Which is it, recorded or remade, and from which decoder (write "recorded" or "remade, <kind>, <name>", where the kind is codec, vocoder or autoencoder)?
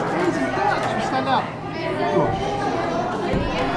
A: recorded